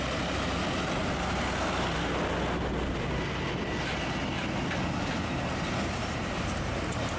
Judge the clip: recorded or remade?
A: recorded